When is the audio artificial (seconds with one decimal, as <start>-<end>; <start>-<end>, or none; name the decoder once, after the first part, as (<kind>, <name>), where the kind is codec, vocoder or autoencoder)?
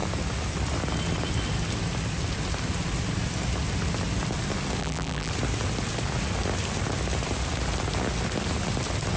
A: 4.8-5.3 (vocoder, BigVGAN v2)